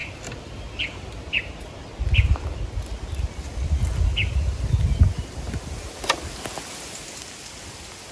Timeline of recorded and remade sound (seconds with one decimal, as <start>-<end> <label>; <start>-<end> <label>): 0.0-2.6 remade; 2.6-8.1 recorded